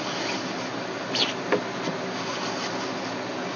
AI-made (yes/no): no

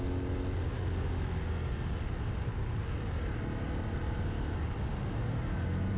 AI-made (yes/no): no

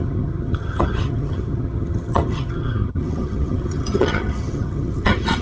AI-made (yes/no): yes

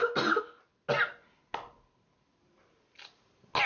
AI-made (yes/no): no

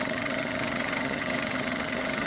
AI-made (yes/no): yes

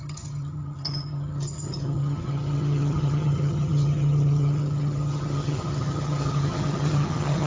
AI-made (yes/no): yes